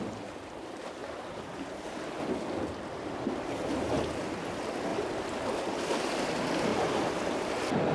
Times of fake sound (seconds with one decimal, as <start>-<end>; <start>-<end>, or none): 1.0-2.0; 6.7-7.5